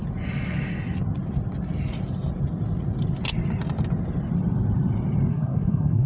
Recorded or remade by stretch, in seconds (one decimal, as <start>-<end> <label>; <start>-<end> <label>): 0.0-5.3 recorded; 5.3-6.1 remade